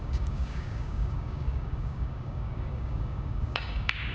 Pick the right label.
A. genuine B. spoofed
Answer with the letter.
B